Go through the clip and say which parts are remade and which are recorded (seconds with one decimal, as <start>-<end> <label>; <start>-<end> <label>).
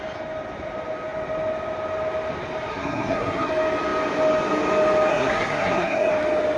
0.0-2.7 recorded; 2.7-3.5 remade; 3.5-5.1 recorded; 5.1-6.1 remade; 6.1-6.6 recorded